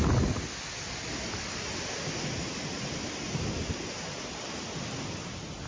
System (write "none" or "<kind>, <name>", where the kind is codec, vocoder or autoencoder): none